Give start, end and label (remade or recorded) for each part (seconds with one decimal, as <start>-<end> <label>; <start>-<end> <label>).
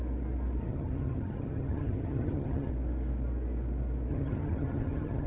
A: 0.0-0.6 recorded; 0.6-2.7 remade; 2.7-4.1 recorded; 4.1-5.3 remade